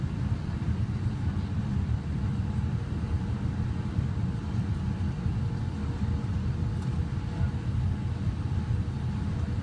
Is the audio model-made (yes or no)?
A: no